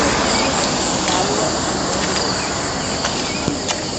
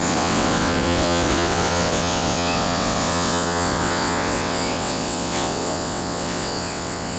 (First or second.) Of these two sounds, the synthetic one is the second